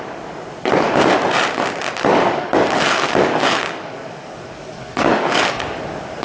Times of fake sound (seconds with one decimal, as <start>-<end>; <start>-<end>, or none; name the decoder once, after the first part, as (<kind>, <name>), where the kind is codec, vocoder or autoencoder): 2.1-5.8 (codec, DAC)